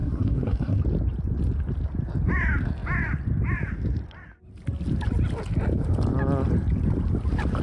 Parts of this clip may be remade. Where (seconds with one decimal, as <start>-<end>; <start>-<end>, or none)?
0.0-0.8